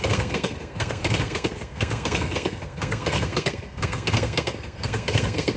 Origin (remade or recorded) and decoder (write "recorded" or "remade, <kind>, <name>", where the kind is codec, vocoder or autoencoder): remade, codec, SNAC